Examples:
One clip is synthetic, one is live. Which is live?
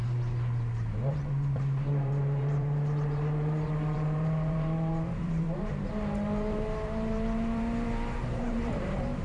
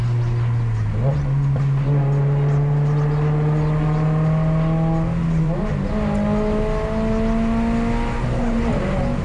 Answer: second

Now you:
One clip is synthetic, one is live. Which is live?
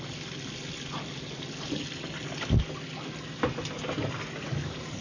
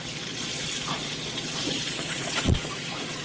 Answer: first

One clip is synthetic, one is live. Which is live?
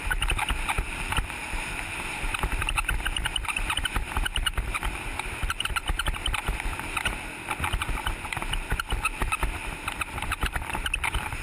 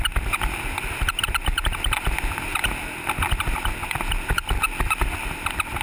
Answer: second